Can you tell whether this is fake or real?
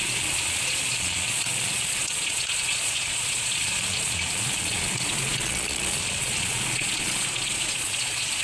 fake